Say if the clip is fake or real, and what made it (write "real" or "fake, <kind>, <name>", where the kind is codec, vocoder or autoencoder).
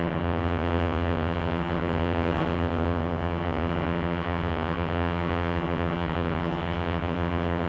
fake, vocoder, HiFi-GAN